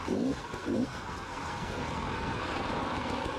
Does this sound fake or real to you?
fake